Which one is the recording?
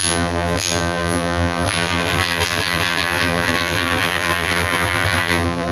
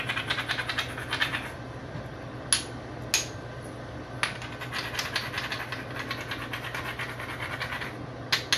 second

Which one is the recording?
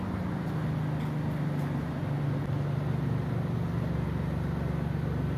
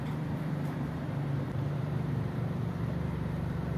first